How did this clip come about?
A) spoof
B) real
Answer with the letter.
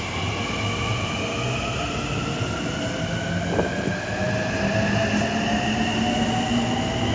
B